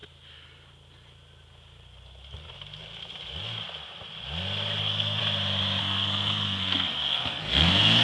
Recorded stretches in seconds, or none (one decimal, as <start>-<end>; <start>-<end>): 0.0-4.8; 5.2-5.8